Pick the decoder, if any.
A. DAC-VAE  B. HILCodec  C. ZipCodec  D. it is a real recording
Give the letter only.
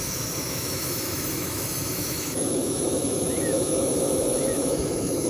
A